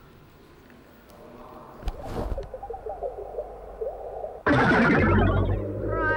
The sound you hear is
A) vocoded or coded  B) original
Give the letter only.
B